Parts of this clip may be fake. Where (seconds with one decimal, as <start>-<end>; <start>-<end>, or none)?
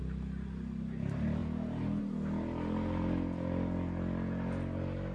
none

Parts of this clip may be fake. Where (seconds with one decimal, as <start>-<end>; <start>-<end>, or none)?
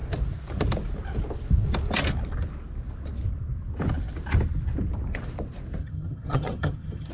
5.8-7.1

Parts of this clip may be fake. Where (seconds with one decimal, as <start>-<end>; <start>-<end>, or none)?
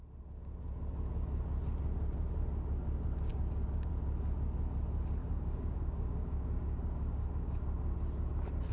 5.2-7.6